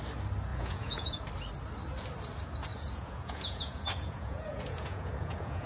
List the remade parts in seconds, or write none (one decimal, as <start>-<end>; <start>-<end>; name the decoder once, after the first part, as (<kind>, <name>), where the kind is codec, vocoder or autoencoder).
0.5-1.2 (vocoder, Vocos); 2.7-5.7